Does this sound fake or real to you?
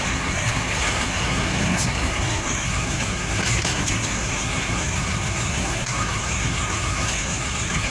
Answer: fake